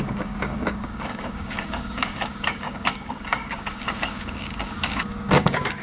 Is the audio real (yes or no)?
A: no